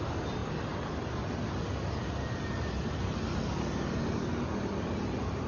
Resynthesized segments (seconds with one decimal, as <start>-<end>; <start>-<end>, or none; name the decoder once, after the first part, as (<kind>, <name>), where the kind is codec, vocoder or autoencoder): none

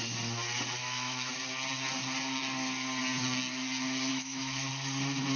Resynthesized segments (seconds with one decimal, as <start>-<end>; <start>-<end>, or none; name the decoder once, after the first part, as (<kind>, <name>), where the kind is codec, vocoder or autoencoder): 0.8-1.3 (autoencoder, DAC-VAE); 4.1-4.7

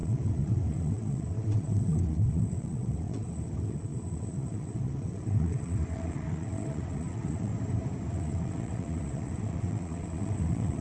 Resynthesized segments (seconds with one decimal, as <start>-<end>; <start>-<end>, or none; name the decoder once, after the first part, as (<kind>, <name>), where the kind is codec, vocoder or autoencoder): 0.0-7.5 (vocoder, WaveNeXt); 8.1-10.8

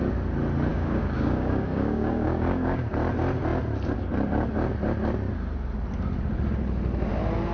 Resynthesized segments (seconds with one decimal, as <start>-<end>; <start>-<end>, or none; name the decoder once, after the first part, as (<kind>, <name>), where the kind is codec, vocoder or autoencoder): 0.7-2.9 (codec, DAC)

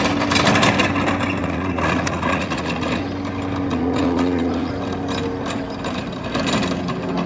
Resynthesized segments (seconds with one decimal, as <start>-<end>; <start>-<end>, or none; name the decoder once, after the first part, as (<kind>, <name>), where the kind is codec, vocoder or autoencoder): 1.4-3.0 (vocoder, Vocos); 3.7-4.7

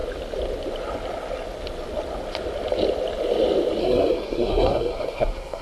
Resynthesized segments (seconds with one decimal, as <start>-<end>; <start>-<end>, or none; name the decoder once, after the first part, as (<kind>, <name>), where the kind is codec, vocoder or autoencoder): 3.8-5.6 (codec, SNAC)

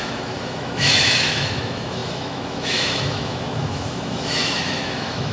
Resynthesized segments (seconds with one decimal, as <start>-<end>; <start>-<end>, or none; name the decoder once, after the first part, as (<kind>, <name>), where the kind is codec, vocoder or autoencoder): 0.0-5.3 (autoencoder, DAC-VAE)